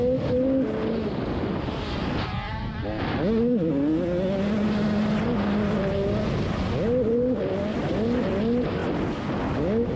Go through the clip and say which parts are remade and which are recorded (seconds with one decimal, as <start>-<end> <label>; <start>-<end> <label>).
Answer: 0.0-10.0 recorded